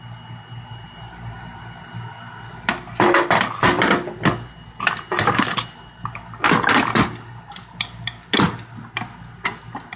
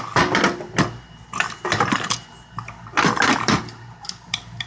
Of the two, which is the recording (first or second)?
first